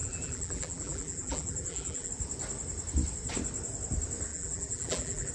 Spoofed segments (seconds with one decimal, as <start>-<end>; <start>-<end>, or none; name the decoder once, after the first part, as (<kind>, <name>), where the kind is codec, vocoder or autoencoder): 0.0-2.1 (vocoder, BigVGAN v2); 4.3-5.3